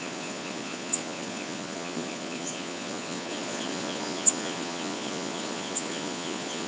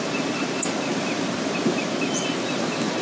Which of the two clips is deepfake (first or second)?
first